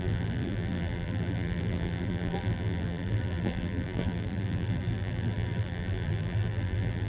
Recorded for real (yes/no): no